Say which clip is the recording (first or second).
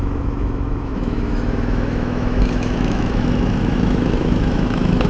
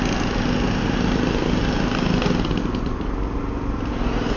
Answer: second